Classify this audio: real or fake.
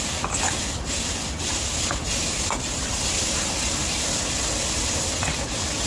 real